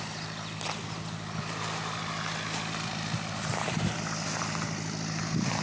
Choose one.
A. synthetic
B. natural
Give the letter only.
B